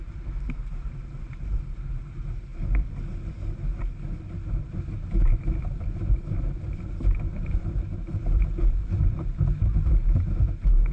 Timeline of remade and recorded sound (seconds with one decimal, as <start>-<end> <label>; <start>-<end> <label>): 0.0-2.5 remade; 2.5-5.2 recorded; 5.2-10.9 remade